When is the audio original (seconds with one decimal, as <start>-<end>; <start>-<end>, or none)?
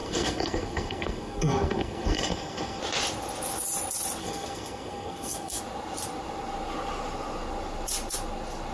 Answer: 2.8-4.2; 5.6-8.7